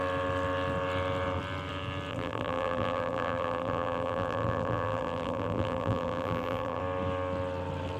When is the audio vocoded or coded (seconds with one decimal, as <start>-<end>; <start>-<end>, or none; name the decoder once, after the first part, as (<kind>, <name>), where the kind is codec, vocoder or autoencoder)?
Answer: 2.1-6.8 (vocoder, BigVGAN v2)